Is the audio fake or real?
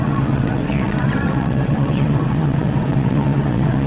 fake